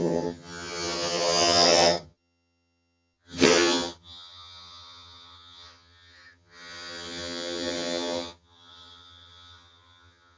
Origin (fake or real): fake